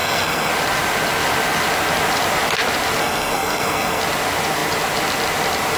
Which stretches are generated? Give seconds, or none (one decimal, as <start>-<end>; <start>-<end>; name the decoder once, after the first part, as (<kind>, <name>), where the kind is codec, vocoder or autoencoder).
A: 0.0-0.5 (codec, SNAC); 3.0-4.0